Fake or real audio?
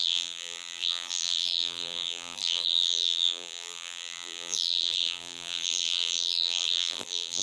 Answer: fake